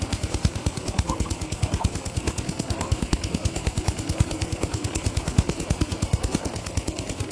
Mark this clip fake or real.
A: fake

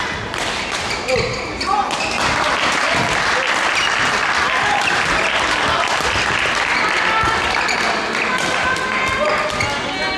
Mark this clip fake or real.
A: real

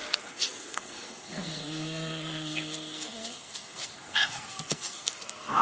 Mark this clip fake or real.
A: fake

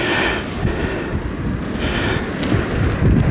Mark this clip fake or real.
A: real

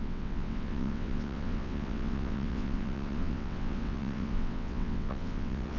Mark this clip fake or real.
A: fake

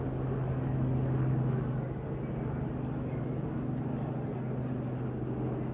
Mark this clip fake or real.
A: real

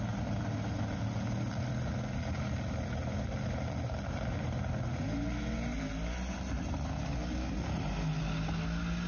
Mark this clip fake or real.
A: real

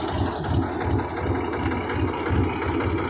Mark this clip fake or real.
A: real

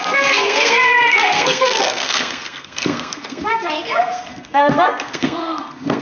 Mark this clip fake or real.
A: fake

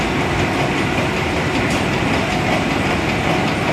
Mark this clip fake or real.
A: real